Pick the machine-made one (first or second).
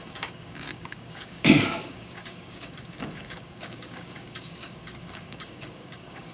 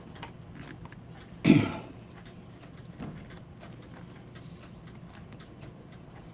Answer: first